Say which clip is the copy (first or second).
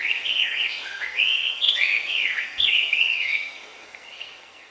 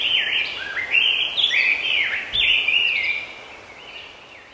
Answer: first